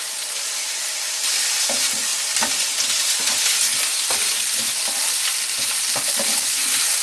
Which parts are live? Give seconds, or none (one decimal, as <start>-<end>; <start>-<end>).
2.1-3.0